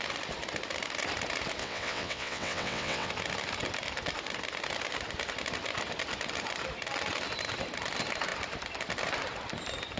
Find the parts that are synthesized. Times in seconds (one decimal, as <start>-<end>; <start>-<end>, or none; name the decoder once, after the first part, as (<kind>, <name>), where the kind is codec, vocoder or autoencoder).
1.6-3.1 (vocoder, WaveNeXt)